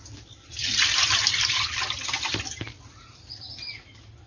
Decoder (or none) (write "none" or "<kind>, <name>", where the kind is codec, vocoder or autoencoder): none